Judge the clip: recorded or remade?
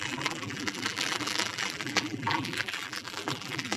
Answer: remade